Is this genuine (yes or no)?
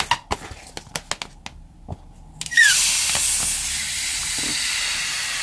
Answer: yes